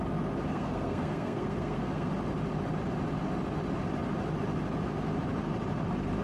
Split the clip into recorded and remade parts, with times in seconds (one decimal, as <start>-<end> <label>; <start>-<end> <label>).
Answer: 0.0-0.5 recorded; 0.5-2.1 remade; 2.1-6.2 recorded